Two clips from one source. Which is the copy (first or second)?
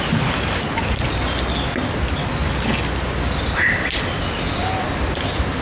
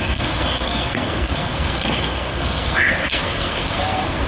second